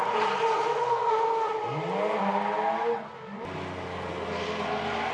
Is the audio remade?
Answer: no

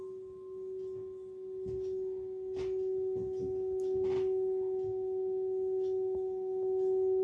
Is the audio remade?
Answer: no